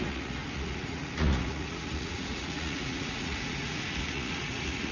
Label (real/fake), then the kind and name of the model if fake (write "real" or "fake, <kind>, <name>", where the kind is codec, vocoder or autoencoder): fake, vocoder, Vocos